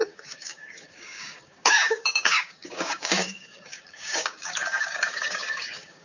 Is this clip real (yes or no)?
no